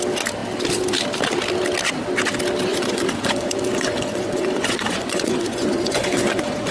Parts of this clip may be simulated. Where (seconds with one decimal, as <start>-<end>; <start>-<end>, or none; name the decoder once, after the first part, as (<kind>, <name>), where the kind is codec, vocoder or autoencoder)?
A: 2.7-6.7 (vocoder, Vocos)